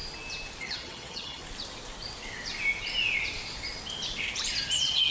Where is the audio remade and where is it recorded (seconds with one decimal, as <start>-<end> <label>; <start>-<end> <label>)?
0.0-0.6 recorded; 0.6-1.4 remade; 1.4-4.5 recorded; 4.5-5.1 remade